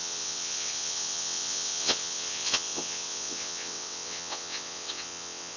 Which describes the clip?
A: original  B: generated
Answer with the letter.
B